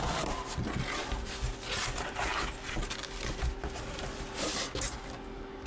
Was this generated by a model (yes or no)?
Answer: no